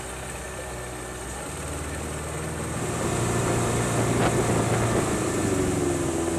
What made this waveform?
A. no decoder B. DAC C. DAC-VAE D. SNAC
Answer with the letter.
A